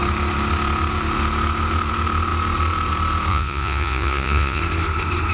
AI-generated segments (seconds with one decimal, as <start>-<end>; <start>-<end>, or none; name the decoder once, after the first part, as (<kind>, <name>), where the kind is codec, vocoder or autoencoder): 3.3-4.6 (vocoder, Vocos)